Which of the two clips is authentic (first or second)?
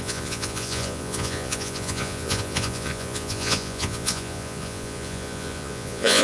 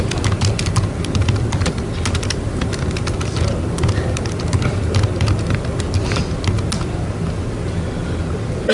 second